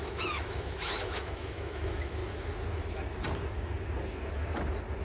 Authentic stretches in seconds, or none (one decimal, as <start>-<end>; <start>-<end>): 2.2-5.0

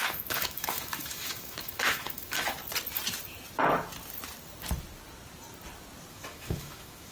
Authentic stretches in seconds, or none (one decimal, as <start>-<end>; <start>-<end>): 2.6-6.1